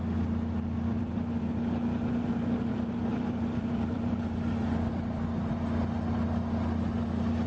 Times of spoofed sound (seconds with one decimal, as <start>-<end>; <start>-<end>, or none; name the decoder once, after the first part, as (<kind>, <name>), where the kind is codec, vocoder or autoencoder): 0.9-1.5 (vocoder, BigVGAN v2); 2.7-5.5